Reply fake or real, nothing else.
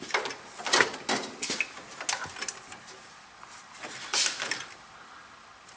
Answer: real